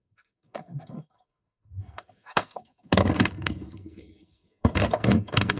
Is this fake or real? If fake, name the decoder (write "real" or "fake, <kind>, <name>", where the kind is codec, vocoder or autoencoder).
fake, codec, SNAC